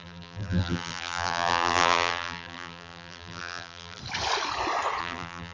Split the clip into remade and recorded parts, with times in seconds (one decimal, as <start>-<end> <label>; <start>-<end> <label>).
0.0-4.0 remade; 4.0-5.0 recorded; 5.0-5.5 remade